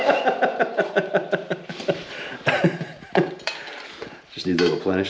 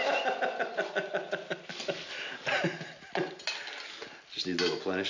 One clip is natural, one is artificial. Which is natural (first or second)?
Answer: second